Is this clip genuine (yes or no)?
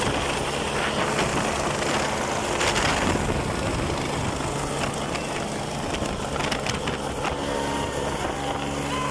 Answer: yes